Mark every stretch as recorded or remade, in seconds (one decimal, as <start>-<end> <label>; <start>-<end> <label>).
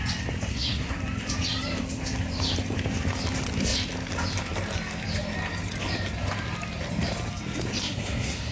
0.0-0.5 recorded; 0.5-1.0 remade; 1.0-7.8 recorded; 7.8-8.5 remade